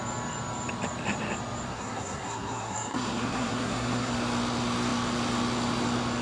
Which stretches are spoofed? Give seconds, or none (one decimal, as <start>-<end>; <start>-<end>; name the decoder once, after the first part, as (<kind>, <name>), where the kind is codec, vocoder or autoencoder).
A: 1.7-4.1 (codec, SNAC)